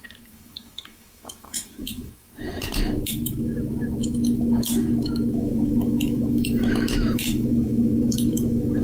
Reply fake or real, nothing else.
fake